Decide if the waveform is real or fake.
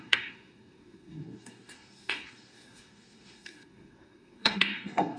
fake